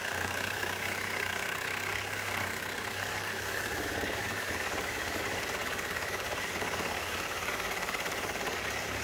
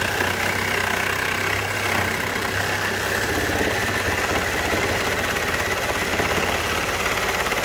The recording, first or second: second